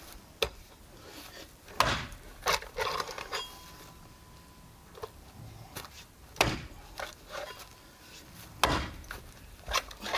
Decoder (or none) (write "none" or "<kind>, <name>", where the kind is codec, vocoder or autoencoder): none